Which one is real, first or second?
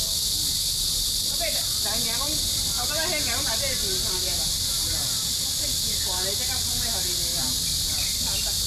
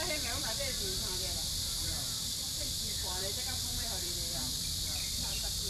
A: first